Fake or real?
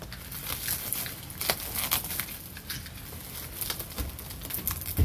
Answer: real